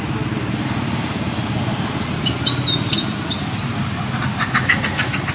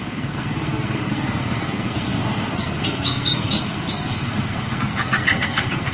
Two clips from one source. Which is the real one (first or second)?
first